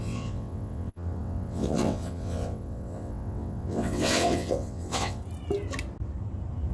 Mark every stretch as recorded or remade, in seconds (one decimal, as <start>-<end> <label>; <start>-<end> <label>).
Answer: 0.0-5.2 remade; 5.2-6.7 recorded